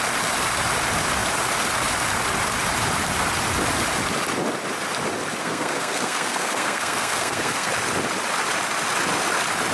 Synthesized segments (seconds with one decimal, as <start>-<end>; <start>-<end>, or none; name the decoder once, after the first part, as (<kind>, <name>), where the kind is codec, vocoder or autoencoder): 5.4-7.7 (codec, SNAC)

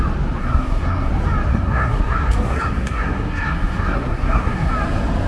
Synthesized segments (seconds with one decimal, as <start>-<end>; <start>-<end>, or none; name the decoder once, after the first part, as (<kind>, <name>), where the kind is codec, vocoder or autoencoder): 0.4-1.1 (codec, SNAC); 1.5-4.7